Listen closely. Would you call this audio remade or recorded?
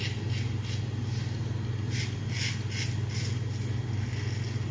recorded